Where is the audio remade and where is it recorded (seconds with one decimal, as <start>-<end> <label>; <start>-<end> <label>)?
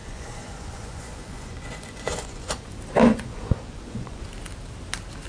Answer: 0.0-2.7 remade; 2.7-3.1 recorded; 3.1-4.2 remade; 4.2-5.3 recorded